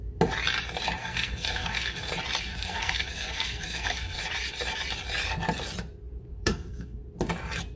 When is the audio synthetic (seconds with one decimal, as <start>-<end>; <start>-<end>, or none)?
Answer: 1.0-2.1; 2.5-4.2; 6.3-7.0